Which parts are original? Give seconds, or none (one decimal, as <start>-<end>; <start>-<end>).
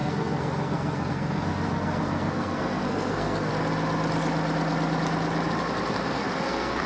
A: 3.5-5.9